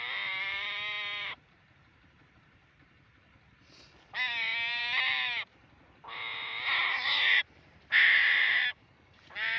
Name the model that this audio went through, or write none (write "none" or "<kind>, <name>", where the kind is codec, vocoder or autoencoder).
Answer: vocoder, BigVGAN v2